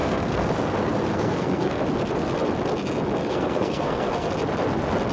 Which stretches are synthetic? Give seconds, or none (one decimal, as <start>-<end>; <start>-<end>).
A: 0.0-0.5; 1.1-1.8; 3.2-4.3